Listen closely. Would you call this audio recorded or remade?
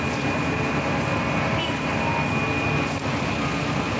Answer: recorded